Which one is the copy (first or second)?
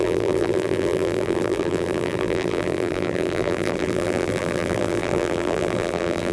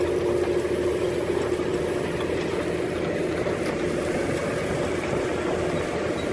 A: first